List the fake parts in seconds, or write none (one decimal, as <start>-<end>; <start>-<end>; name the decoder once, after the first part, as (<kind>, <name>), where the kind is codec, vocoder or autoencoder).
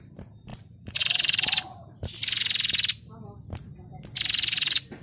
0.0-2.1 (vocoder, BigVGAN v2)